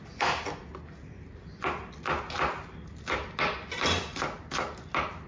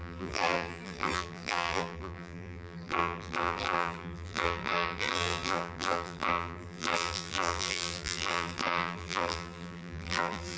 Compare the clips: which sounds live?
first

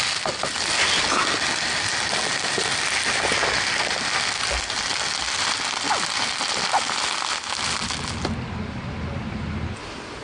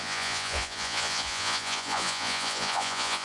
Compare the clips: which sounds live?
first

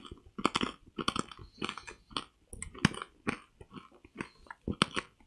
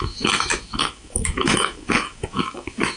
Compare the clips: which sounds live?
first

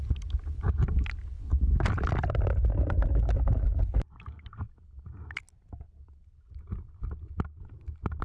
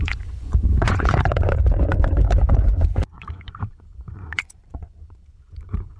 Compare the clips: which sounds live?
first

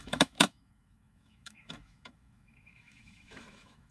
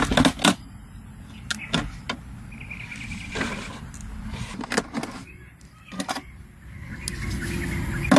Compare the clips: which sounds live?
second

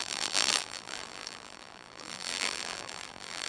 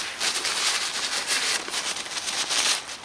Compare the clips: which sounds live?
second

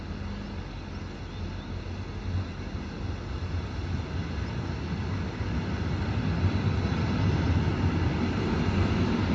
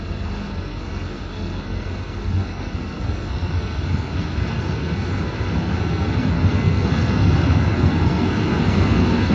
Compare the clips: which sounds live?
first